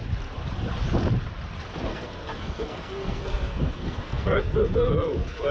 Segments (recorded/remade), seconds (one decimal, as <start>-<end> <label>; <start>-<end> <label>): 0.0-1.9 recorded; 1.9-5.5 remade